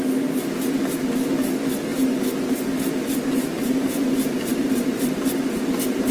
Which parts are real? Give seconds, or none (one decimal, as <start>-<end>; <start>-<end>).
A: 0.0-1.9; 5.2-6.1